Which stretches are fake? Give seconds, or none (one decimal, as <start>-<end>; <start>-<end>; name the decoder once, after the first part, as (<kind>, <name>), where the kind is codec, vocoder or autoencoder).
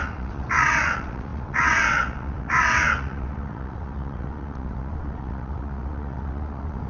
0.0-6.9 (vocoder, WaveNeXt)